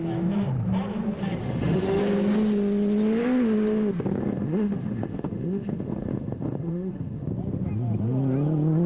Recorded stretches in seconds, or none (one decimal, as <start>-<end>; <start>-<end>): 0.0-1.4; 2.0-4.2; 7.3-8.9